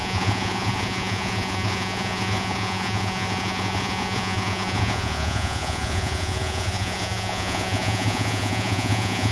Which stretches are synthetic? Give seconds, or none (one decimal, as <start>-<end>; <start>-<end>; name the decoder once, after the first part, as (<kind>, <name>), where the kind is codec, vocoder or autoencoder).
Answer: 0.0-9.3 (vocoder, Vocos)